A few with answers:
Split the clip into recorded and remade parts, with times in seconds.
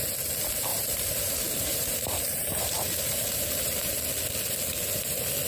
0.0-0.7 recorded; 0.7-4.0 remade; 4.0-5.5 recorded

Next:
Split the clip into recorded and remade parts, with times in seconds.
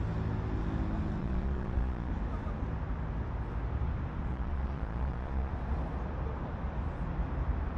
0.0-1.2 recorded; 1.2-2.1 remade; 2.1-4.3 recorded; 4.3-5.5 remade; 5.5-7.8 recorded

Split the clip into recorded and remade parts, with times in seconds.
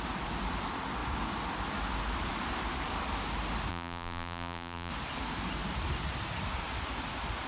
0.0-3.7 recorded; 3.7-4.9 remade; 4.9-7.5 recorded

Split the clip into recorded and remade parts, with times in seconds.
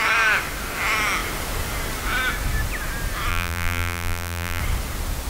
0.0-3.3 recorded; 3.3-4.6 remade; 4.6-5.3 recorded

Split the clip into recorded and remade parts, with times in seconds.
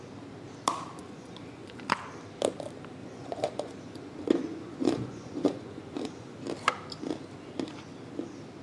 0.0-1.0 recorded; 1.0-1.8 remade; 1.8-3.0 recorded; 3.0-6.4 remade; 6.4-8.6 recorded